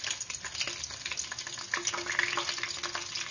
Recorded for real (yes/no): yes